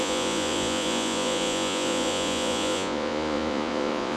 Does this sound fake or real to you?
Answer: fake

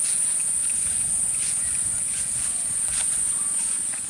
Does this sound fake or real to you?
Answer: fake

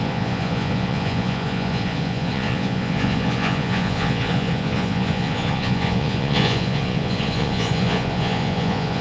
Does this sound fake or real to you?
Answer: fake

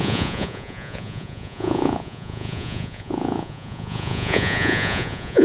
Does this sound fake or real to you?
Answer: fake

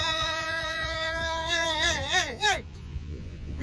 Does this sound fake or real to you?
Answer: fake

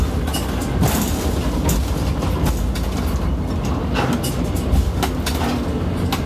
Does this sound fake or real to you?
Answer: real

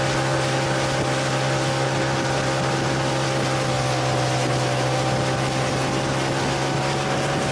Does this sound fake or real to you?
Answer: real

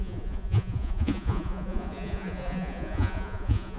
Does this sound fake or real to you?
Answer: fake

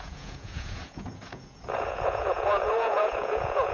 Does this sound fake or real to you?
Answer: fake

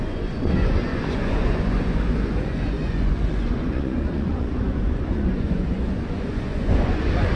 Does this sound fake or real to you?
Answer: fake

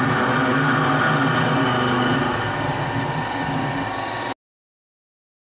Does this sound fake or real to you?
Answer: real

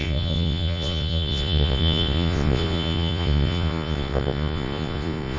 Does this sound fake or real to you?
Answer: fake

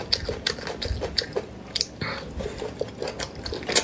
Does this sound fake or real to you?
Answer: real